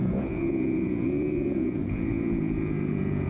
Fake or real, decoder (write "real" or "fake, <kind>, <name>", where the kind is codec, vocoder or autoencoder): fake, vocoder, Vocos